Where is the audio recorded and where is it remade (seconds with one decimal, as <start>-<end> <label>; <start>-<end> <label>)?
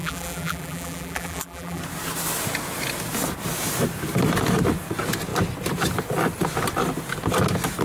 0.0-1.8 remade; 1.8-7.8 recorded